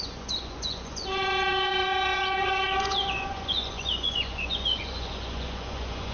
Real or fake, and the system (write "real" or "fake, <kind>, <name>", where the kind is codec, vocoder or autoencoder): fake, vocoder, Vocos